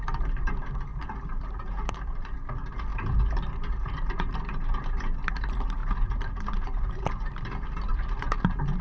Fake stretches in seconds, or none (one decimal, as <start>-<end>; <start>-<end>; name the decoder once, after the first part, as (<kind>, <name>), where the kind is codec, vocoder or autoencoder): 0.0-8.8 (vocoder, BigVGAN v2)